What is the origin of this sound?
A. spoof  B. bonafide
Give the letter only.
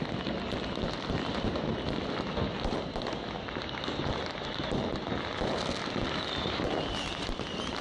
B